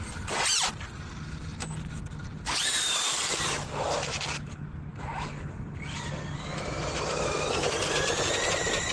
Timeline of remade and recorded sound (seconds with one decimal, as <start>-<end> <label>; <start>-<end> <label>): 0.0-8.9 recorded